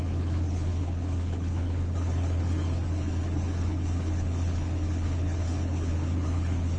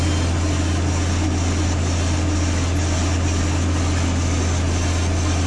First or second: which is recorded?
second